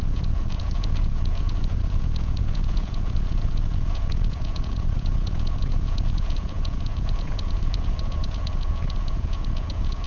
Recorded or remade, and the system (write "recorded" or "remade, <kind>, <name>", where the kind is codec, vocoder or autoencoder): remade, vocoder, Vocos